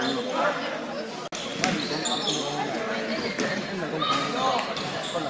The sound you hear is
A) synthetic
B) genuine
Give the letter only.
B